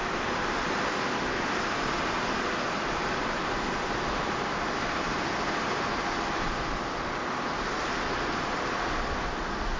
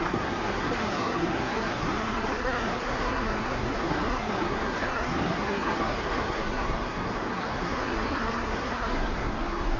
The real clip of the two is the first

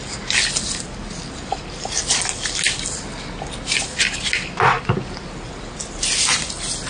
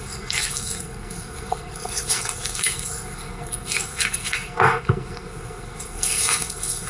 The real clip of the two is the first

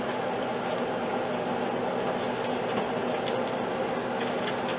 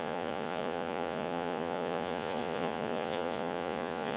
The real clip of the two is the first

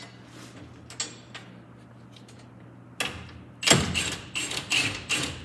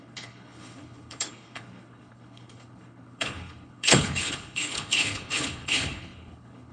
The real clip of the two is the first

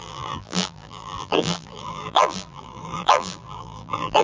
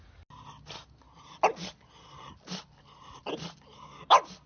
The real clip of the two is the second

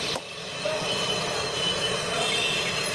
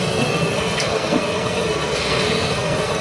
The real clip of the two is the first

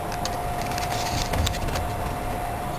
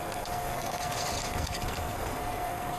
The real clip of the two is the first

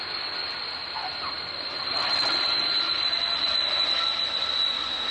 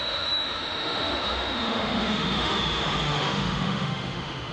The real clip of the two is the first